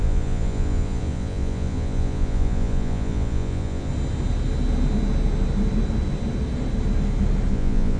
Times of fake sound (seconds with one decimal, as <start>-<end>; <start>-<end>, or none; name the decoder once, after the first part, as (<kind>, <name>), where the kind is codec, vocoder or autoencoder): 0.0-3.9 (vocoder, Vocos); 7.5-8.0